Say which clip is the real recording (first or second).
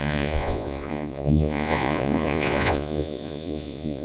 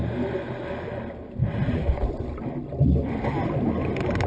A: second